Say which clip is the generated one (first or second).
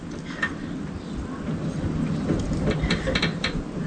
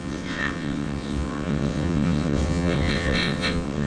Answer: second